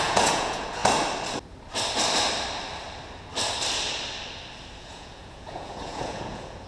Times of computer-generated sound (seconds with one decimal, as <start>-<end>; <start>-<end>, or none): 0.0-0.8; 4.8-6.7